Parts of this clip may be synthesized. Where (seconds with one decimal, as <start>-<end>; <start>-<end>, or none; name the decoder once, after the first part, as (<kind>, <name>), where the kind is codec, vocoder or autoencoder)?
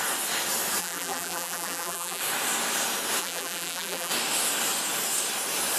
0.8-2.2 (vocoder, BigVGAN v2); 3.2-4.1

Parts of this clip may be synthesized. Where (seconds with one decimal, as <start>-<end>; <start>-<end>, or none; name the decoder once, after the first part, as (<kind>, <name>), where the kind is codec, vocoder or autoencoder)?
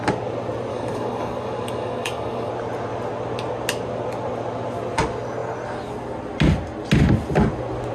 0.7-2.5 (codec, DAC)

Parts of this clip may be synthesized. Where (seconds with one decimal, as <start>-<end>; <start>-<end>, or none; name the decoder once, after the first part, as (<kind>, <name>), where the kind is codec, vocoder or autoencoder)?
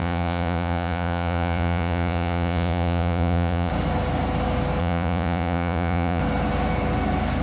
0.0-3.7 (vocoder, Vocos); 4.8-6.2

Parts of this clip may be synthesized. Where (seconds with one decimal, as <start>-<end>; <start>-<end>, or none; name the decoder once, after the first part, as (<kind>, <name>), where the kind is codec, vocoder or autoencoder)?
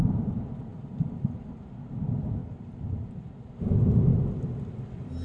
0.7-1.6 (vocoder, BigVGAN v2); 2.4-3.1